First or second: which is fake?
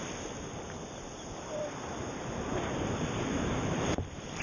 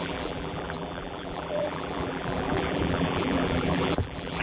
second